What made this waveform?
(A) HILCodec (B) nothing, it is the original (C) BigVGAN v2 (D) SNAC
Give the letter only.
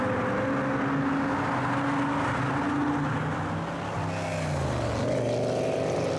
B